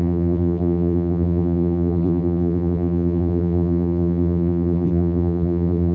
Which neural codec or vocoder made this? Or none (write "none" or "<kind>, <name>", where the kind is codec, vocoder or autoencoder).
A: vocoder, BigVGAN v2